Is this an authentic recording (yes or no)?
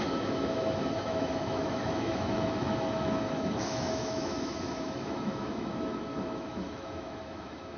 no